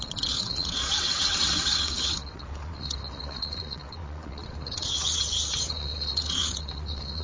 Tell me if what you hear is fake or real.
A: fake